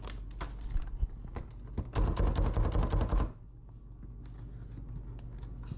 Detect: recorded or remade recorded